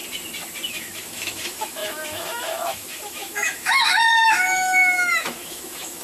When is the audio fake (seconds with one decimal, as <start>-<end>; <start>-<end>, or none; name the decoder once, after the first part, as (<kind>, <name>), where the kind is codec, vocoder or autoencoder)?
0.7-6.0 (autoencoder, DAC-VAE)